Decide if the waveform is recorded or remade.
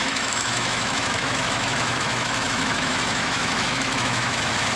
remade